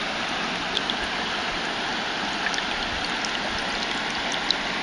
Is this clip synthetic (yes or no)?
no